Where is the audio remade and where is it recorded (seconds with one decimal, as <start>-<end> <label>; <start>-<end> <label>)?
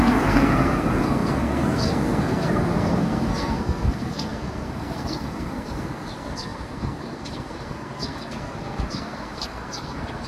0.0-10.3 remade